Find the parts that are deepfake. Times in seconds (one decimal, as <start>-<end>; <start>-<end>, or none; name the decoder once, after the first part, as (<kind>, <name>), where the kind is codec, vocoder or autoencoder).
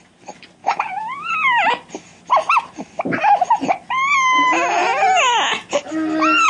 0.6-1.3 (vocoder, Vocos)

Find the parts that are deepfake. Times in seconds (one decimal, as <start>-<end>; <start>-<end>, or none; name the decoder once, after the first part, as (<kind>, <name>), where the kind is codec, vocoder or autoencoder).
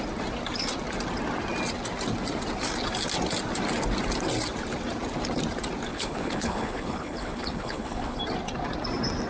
5.9-8.2 (codec, HILCodec)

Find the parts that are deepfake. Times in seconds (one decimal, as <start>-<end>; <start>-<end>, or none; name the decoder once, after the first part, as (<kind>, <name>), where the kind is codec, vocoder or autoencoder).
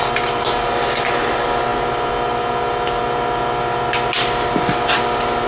none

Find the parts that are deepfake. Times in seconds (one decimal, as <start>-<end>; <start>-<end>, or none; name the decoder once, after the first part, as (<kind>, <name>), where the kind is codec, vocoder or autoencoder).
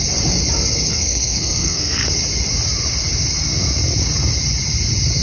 0.9-2.1 (codec, SNAC)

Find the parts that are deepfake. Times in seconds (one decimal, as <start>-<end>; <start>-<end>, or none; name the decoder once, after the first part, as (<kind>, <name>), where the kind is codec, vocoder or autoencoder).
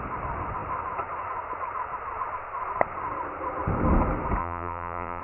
4.4-5.2 (vocoder, BigVGAN v2)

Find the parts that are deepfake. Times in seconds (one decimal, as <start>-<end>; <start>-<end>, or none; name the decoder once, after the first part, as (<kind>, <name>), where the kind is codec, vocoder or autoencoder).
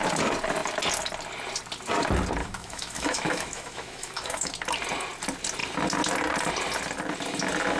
2.4-4.5 (autoencoder, DAC-VAE)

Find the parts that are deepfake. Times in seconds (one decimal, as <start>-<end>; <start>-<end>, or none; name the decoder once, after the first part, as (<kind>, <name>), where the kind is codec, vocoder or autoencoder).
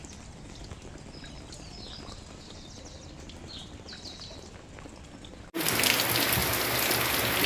0.0-4.5 (vocoder, BigVGAN v2)